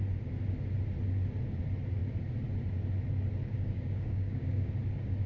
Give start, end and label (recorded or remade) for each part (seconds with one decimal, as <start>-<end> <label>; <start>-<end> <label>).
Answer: 0.0-3.4 recorded; 3.4-4.7 remade; 4.7-5.3 recorded